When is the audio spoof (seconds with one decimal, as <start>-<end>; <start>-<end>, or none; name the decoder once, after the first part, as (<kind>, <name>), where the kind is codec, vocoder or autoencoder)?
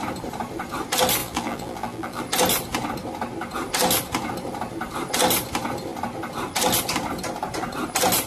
1.2-2.2 (vocoder, BigVGAN v2)